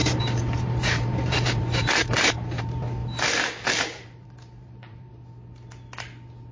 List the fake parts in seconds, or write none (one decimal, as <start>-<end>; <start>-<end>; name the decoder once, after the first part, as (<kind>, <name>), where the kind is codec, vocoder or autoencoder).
0.0-2.6 (vocoder, BigVGAN v2); 3.0-5.1